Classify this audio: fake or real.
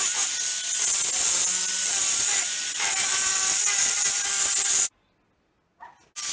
real